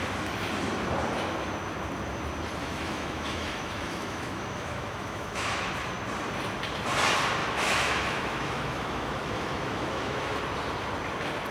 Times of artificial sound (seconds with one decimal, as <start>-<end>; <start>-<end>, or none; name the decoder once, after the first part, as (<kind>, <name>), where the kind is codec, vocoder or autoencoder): 2.6-5.7 (autoencoder, DAC-VAE); 7.4-10.4